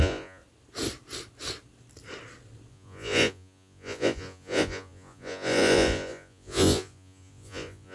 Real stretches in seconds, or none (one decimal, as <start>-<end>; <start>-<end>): 0.4-2.7